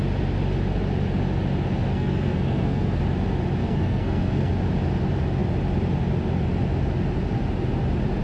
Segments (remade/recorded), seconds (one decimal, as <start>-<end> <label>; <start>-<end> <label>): 0.0-1.9 recorded; 1.9-3.0 remade; 3.0-3.6 recorded; 3.6-4.5 remade; 4.5-8.2 recorded